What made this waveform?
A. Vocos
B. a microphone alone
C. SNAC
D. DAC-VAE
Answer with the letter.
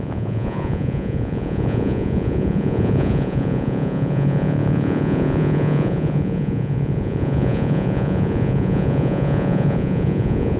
A